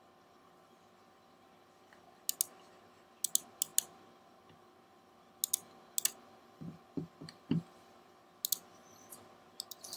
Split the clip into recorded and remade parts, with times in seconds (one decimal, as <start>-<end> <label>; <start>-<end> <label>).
0.0-10.0 recorded